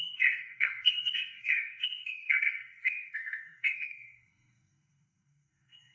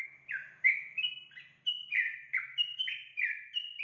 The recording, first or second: second